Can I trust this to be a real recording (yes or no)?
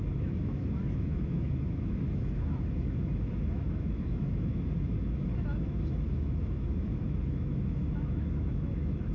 no